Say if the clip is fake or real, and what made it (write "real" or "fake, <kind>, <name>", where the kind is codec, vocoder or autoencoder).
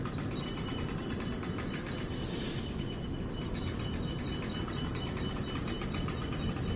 real